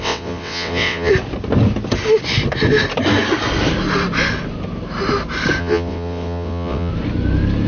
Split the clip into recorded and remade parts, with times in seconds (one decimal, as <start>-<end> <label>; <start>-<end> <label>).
0.0-1.1 remade; 1.1-5.6 recorded; 5.6-6.9 remade; 6.9-7.7 recorded